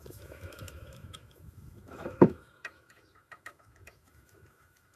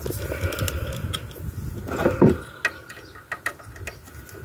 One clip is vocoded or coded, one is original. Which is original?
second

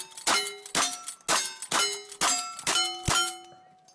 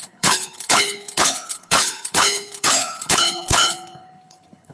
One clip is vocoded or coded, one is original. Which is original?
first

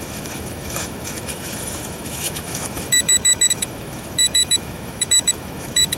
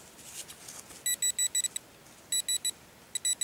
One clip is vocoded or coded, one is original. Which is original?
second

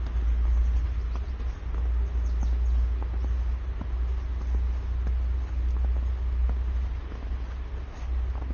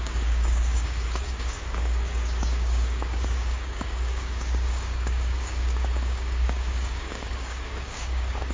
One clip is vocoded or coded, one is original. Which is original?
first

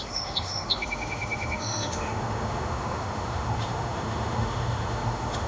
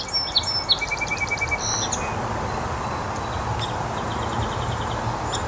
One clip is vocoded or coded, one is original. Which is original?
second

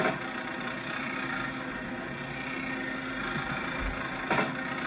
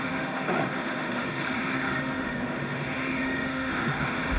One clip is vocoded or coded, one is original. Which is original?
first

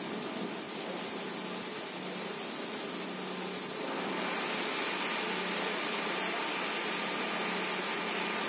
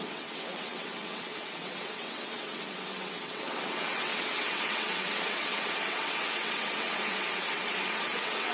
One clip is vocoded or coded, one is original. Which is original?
first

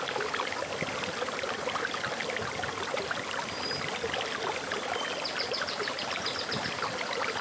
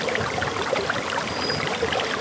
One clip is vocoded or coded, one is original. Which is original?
first